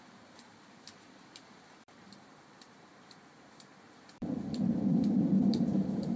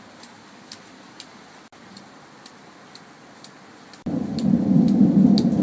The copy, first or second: first